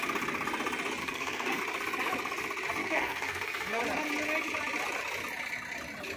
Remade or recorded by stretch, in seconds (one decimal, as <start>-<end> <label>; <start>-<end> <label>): 0.0-1.0 recorded; 1.0-1.6 remade; 1.6-2.8 recorded; 2.8-3.8 remade; 3.8-6.2 recorded